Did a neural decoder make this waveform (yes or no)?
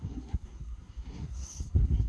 yes